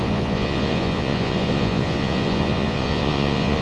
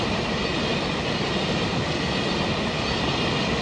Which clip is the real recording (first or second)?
second